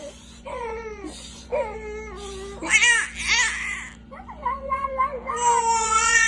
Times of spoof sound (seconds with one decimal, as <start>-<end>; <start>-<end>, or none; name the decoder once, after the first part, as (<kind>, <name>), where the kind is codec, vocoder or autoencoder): 0.0-1.5 (vocoder, Vocos); 4.0-4.9; 5.8-6.3